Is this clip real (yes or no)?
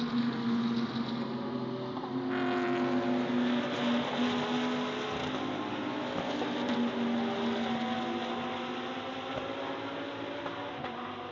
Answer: yes